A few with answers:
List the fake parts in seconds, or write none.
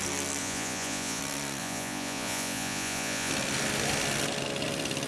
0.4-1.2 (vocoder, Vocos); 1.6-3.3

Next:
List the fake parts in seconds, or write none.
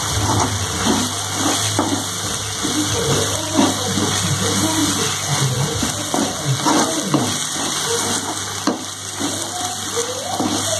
none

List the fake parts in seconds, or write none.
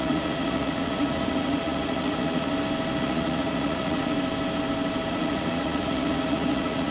0.0-2.5 (vocoder, Vocos); 3.0-4.1; 5.1-6.9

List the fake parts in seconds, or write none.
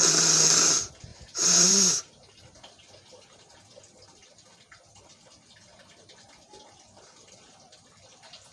1.1-2.0 (vocoder, BigVGAN v2)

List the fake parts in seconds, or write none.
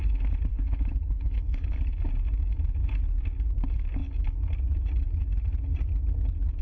0.5-1.8 (codec, HILCodec)